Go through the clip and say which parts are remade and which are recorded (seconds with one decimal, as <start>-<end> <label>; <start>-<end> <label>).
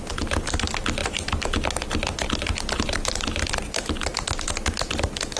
0.0-5.4 recorded